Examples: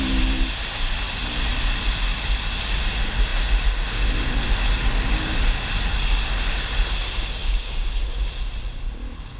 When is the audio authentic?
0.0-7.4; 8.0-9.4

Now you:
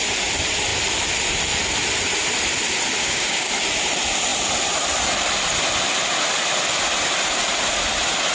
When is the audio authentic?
0.0-3.0; 3.5-8.3

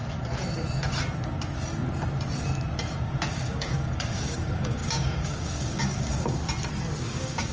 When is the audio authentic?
0.0-3.3; 6.4-7.0

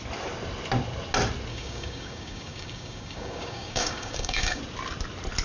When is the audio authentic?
0.0-1.5; 4.6-5.4

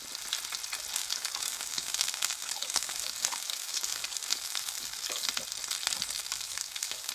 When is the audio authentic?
0.0-1.0; 5.3-6.2